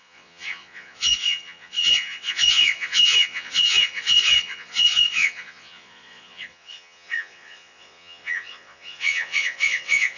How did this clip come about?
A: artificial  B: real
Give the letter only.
A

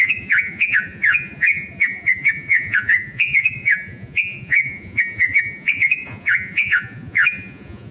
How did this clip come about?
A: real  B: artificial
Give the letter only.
B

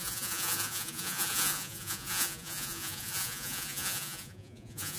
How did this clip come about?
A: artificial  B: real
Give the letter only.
A